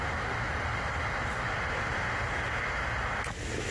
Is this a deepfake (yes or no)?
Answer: no